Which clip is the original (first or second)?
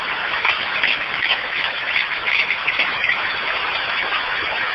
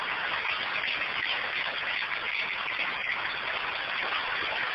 second